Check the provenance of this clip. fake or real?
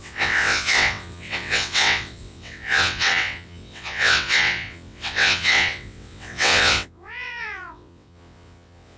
fake